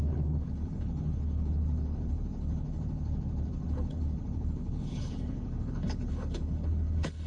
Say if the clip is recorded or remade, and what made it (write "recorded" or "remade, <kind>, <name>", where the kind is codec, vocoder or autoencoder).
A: remade, codec, HILCodec